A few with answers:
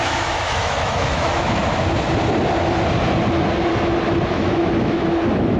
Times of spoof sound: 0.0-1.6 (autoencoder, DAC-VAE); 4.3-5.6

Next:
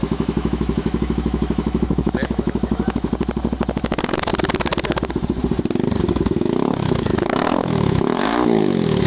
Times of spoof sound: 0.0-3.1 (autoencoder, DAC-VAE); 3.8-4.3; 6.1-9.1

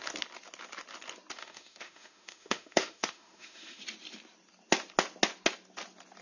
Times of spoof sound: 1.4-3.8 (autoencoder, DAC-VAE)

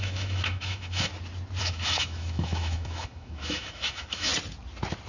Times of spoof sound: 0.0-1.1 (autoencoder, DAC-VAE); 1.6-4.3

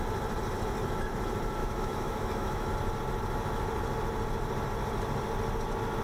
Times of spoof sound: 1.6-2.7 (autoencoder, DAC-VAE)